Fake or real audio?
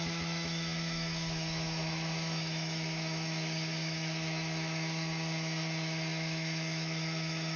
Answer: fake